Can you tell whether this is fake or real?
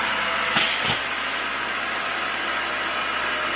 real